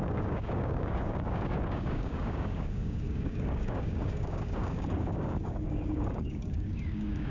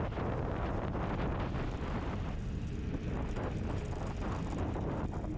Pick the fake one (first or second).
first